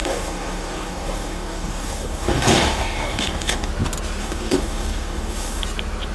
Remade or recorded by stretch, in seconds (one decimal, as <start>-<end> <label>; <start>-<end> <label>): 0.0-3.7 remade; 3.7-4.2 recorded; 4.2-5.6 remade; 5.6-6.1 recorded